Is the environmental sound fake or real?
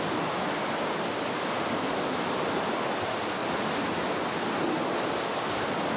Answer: real